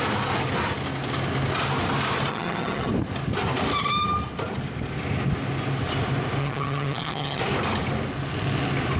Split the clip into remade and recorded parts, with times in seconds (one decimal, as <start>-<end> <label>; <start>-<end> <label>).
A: 0.0-2.3 recorded; 2.3-2.9 remade; 2.9-6.4 recorded; 6.4-7.4 remade; 7.4-9.0 recorded

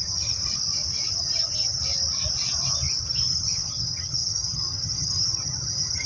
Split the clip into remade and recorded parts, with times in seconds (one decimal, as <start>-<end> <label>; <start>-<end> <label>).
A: 0.0-0.4 remade; 0.4-1.1 recorded; 1.1-1.8 remade; 1.8-3.0 recorded; 3.0-6.1 remade

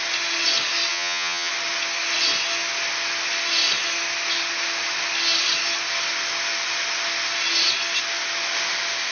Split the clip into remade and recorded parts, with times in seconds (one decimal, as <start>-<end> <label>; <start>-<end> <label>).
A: 0.0-0.9 recorded; 0.9-1.5 remade; 1.5-9.1 recorded

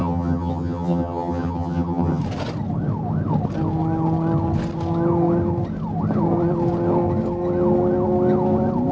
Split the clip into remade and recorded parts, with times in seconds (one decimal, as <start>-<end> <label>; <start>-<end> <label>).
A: 0.0-2.2 remade; 2.2-8.9 recorded

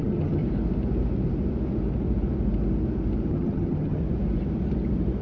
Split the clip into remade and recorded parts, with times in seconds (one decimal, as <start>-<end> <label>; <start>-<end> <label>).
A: 0.0-0.4 remade; 0.4-3.3 recorded; 3.3-4.0 remade; 4.0-5.2 recorded